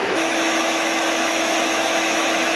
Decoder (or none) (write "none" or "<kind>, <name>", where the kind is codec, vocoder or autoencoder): autoencoder, DAC-VAE